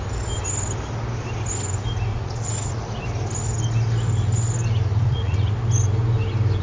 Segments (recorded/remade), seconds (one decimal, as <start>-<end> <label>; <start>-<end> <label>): 0.0-2.1 recorded; 2.1-2.7 remade; 2.7-4.9 recorded; 4.9-5.5 remade; 5.5-6.6 recorded